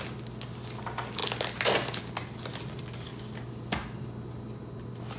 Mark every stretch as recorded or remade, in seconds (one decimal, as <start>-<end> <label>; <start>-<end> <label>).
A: 0.0-5.2 recorded